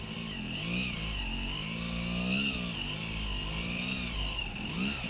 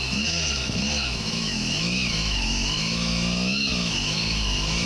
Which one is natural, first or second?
first